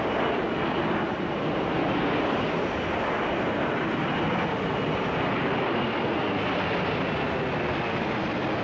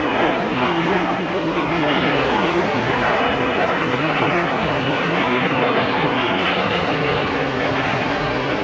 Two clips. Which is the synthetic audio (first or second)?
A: second